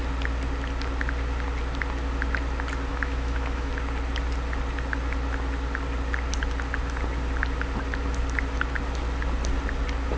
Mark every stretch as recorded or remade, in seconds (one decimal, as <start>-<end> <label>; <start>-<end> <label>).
0.0-2.9 recorded; 2.9-3.7 remade; 3.7-10.2 recorded